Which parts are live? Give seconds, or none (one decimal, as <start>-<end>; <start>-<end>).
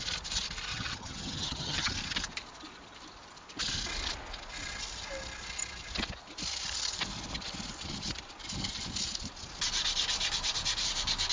0.0-0.7; 1.9-11.3